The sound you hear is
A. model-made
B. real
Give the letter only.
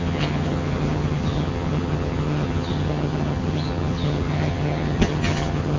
A